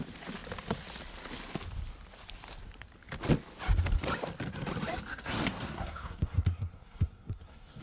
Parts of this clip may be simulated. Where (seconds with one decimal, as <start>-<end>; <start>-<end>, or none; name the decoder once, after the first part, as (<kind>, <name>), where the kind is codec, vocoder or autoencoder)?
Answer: 5.1-7.8 (codec, SNAC)